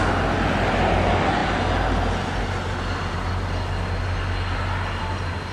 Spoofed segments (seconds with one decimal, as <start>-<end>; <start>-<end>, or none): none